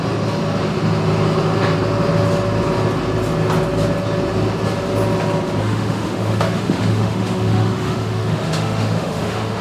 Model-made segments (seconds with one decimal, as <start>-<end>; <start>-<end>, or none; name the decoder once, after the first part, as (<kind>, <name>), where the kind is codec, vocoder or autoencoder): 5.6-9.6 (autoencoder, DAC-VAE)